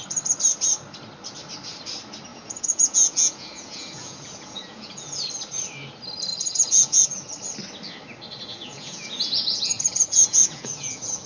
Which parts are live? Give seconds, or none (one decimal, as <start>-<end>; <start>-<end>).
0.0-2.3; 5.3-6.3; 7.3-8.5